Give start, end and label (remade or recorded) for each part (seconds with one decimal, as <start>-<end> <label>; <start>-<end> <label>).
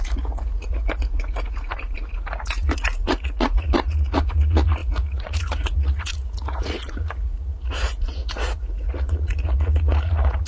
0.0-10.5 remade